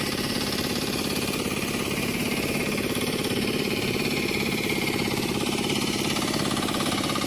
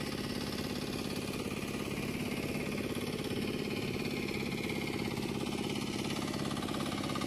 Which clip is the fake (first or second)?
first